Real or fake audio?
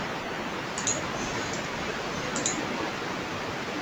real